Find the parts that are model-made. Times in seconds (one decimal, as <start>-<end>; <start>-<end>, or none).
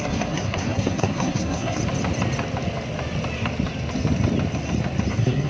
0.0-1.8; 5.1-5.5